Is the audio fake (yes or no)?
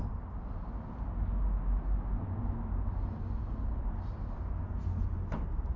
no